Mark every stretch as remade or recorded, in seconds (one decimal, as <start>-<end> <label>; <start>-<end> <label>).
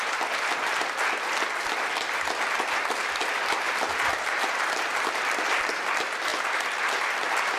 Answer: 0.0-6.3 remade; 6.3-6.8 recorded; 6.8-7.6 remade